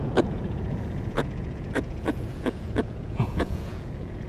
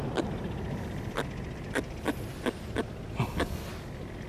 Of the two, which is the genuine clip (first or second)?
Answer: second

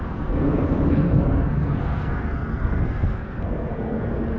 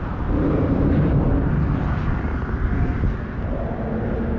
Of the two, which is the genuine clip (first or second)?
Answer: second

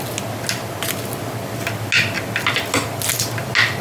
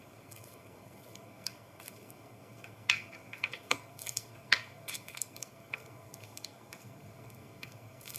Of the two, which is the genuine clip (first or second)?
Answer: first